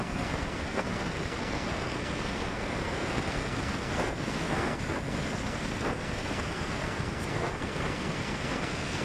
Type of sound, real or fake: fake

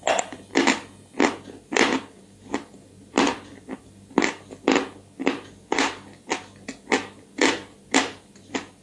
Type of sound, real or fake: real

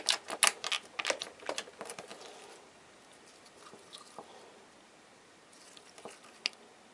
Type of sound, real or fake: real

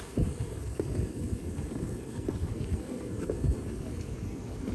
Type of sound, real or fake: fake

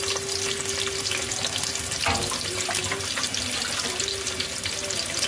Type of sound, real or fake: real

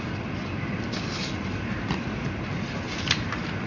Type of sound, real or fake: real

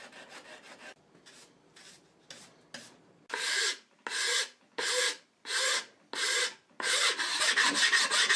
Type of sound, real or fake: real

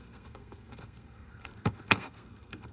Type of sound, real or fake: fake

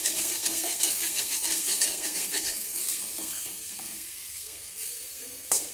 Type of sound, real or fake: fake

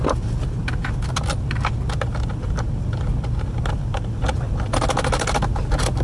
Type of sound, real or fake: real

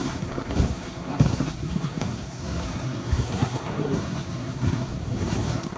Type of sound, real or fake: fake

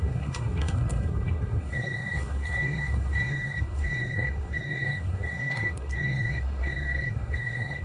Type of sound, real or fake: fake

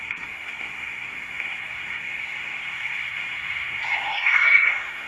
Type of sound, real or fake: fake